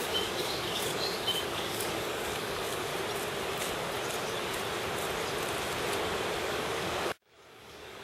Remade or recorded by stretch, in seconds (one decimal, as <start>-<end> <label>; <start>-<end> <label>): 0.0-2.9 remade; 2.9-6.4 recorded; 6.4-8.0 remade